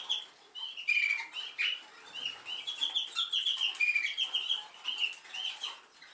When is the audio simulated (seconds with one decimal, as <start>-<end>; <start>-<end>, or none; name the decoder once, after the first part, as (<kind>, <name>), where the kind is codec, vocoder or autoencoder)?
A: 0.6-1.3 (vocoder, BigVGAN v2); 3.4-5.1